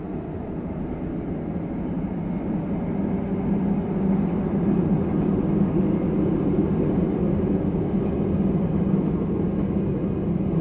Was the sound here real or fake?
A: real